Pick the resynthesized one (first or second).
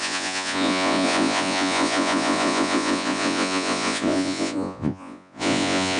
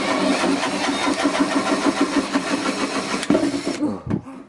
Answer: first